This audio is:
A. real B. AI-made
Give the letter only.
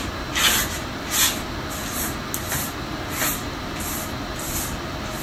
A